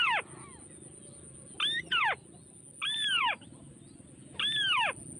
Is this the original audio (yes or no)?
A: yes